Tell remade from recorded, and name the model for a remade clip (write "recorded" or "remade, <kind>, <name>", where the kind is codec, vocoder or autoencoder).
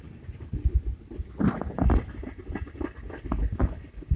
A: recorded